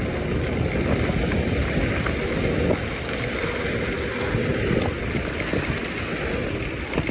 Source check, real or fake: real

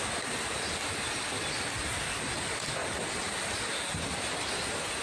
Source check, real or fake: real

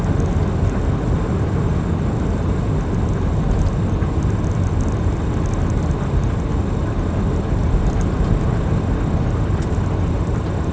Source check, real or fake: real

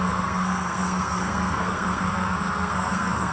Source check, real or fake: fake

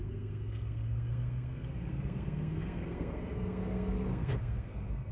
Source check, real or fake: fake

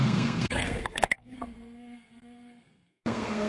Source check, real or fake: fake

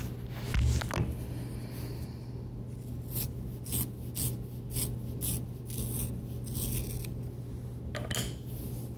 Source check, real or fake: real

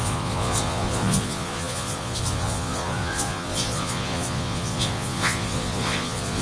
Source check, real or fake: fake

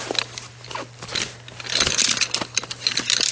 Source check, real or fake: real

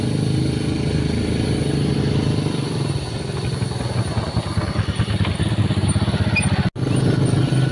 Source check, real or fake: real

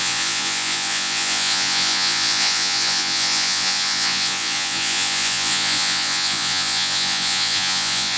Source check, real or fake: fake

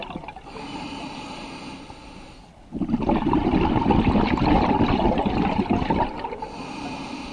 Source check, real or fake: real